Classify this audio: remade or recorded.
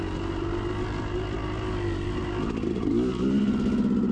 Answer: recorded